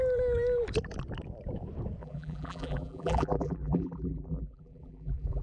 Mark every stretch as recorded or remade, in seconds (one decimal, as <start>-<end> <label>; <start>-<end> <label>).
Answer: 0.0-2.0 recorded; 2.0-5.4 remade